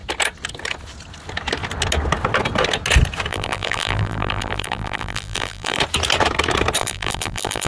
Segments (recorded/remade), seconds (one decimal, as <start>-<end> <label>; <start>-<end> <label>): 0.0-3.3 recorded; 3.3-5.8 remade; 5.8-6.8 recorded; 6.8-7.7 remade